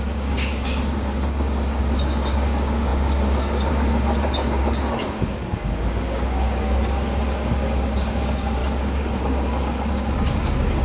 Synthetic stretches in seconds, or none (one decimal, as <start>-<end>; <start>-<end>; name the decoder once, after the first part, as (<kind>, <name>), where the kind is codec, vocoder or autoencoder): 0.0-10.8 (codec, DAC)